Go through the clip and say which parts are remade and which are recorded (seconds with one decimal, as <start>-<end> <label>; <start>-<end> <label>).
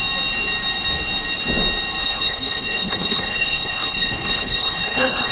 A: 0.0-2.0 recorded; 2.0-5.3 remade